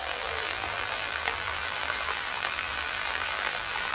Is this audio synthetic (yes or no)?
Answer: yes